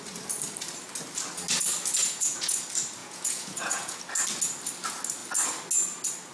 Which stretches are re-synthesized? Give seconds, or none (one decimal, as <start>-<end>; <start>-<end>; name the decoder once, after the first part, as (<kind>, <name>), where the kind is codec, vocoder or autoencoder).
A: 2.0-2.6 (vocoder, Vocos); 3.0-4.0

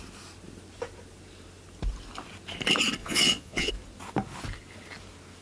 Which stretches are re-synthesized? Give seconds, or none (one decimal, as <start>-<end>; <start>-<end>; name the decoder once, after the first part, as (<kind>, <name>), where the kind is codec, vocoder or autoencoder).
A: 3.0-3.7 (vocoder, Vocos)

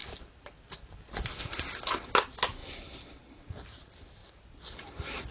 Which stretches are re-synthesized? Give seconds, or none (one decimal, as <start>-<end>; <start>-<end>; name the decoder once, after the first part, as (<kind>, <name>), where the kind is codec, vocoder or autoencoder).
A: none

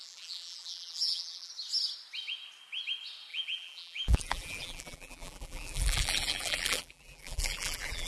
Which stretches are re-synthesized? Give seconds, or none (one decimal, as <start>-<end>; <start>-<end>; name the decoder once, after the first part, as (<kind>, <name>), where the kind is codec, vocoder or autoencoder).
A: 0.0-1.5 (vocoder, BigVGAN v2); 3.3-8.1

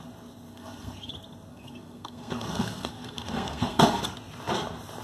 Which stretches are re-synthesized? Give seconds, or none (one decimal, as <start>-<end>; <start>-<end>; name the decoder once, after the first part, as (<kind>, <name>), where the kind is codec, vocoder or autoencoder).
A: 0.5-1.1 (codec, SNAC); 1.5-4.0

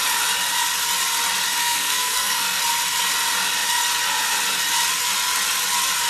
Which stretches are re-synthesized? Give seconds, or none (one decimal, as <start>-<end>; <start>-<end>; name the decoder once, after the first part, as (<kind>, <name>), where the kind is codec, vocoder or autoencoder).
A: 1.6-2.6 (codec, SNAC)

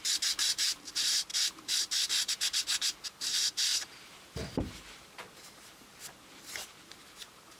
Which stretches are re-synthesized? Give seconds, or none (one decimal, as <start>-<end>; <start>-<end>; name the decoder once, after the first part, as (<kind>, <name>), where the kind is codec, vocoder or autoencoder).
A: 0.0-7.6 (vocoder, BigVGAN v2)